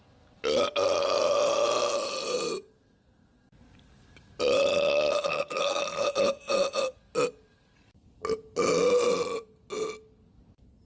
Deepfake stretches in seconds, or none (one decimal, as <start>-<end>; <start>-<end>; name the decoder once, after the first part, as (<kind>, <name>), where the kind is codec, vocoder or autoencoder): 5.3-5.8 (codec, SNAC)